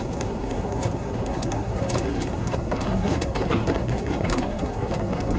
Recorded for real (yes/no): no